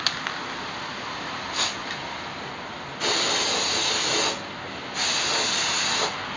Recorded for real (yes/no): yes